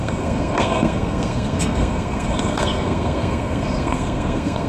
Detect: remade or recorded remade